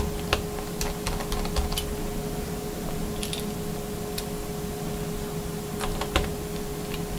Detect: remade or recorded recorded